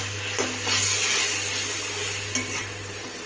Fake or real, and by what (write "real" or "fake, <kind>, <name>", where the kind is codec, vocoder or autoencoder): real